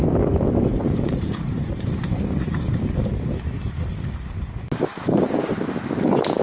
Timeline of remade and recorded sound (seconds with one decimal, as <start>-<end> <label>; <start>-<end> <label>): 0.0-0.7 recorded; 0.7-2.9 remade; 2.9-4.9 recorded; 4.9-5.5 remade; 5.5-6.4 recorded